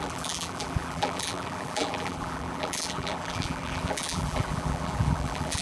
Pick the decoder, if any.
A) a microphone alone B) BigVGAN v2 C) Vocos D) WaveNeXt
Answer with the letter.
B